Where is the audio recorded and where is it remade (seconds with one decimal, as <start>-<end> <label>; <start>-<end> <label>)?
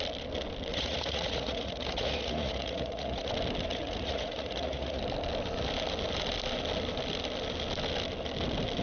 0.0-0.7 recorded; 0.7-3.3 remade; 3.3-3.7 recorded; 3.7-5.0 remade; 5.0-8.8 recorded